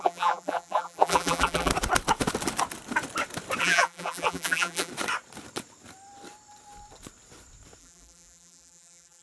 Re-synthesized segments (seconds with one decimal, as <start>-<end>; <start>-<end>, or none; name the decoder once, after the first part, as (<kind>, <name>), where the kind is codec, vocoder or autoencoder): 0.0-1.7 (vocoder, BigVGAN v2); 3.6-4.9; 7.8-9.2